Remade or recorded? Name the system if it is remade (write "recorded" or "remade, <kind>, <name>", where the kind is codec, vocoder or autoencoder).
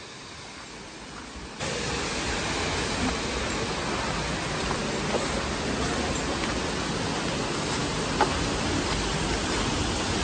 recorded